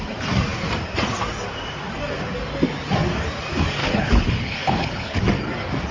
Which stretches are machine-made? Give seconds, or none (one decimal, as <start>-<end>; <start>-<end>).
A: 3.8-5.2

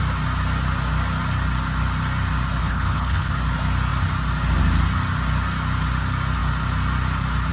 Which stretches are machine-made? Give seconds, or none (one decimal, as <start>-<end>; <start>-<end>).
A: 2.6-3.3

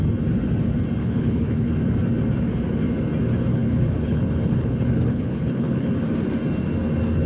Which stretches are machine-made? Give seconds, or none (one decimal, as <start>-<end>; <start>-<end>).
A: 1.0-1.7; 3.5-5.9

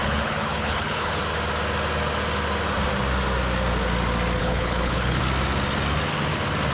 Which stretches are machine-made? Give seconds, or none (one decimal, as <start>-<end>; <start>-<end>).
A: 0.0-1.2; 4.4-5.2

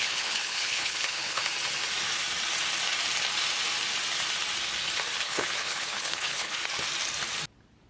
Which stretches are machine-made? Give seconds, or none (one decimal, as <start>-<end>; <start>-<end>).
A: 0.0-1.4; 5.2-6.6